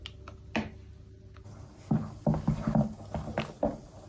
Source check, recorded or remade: recorded